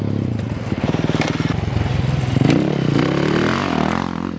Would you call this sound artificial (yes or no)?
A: no